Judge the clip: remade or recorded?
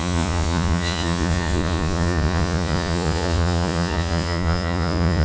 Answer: remade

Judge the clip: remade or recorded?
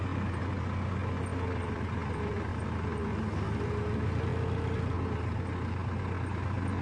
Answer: recorded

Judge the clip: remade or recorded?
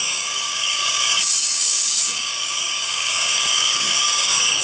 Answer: remade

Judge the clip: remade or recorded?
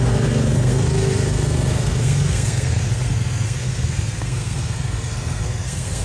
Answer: remade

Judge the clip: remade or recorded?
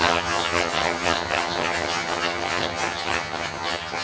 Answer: remade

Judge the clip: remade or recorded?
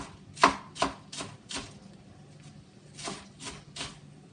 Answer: recorded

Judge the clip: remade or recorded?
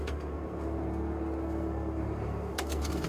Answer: remade